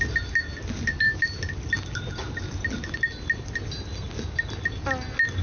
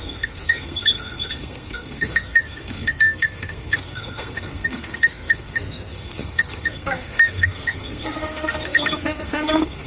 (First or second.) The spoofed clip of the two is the second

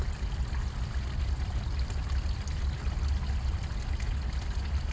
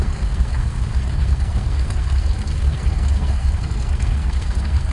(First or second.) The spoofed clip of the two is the second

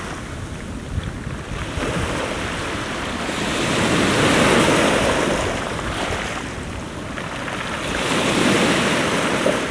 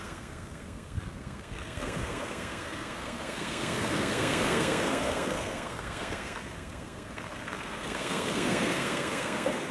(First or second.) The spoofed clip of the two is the second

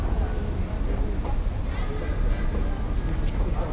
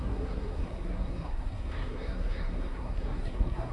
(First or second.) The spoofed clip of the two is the second